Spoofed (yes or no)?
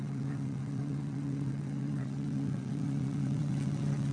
yes